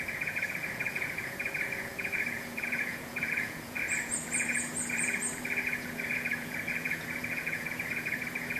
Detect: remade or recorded remade